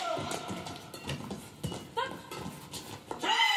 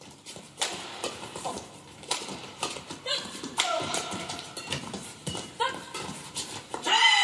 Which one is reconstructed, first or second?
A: second